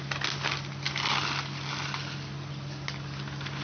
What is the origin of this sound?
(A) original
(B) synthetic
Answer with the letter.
A